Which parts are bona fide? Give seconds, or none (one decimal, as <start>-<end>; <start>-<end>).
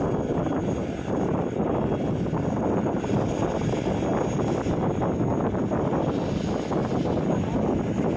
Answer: 0.0-0.8; 3.5-8.2